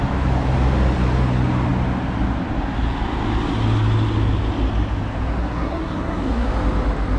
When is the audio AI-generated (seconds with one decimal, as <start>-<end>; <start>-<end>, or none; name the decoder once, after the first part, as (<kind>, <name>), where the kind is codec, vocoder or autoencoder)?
5.4-6.5 (codec, SNAC)